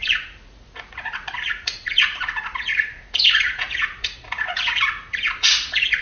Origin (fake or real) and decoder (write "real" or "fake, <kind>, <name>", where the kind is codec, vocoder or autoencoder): fake, vocoder, Vocos